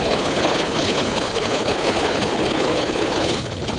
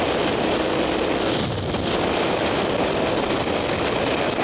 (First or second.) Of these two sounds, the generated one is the first